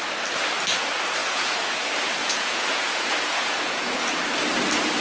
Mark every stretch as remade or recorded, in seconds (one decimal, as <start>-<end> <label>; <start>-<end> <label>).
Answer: 0.0-1.2 recorded; 1.2-1.8 remade; 1.8-2.2 recorded; 2.2-4.1 remade; 4.1-5.0 recorded

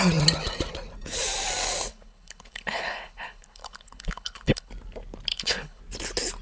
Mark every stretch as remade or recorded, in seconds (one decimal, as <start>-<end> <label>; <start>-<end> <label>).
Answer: 0.0-1.9 recorded; 1.9-4.7 remade; 4.7-5.3 recorded; 5.3-5.8 remade; 5.8-6.4 recorded